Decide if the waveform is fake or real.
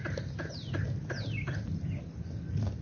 real